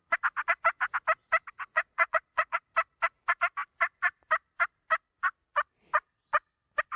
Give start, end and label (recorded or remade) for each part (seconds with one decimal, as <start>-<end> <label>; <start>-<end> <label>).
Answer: 0.0-1.7 recorded; 1.7-2.6 remade; 2.6-7.0 recorded